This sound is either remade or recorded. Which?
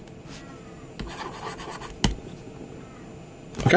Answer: recorded